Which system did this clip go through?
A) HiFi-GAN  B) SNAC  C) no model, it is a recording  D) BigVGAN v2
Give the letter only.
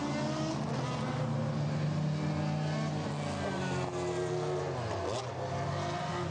C